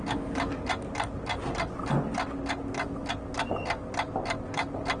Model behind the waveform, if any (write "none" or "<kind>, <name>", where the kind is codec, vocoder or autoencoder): none